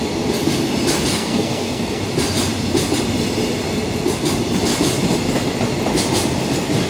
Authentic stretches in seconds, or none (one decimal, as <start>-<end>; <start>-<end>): 0.0-1.1; 2.0-6.9